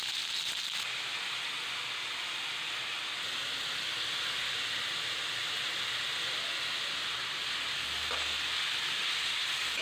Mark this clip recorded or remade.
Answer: recorded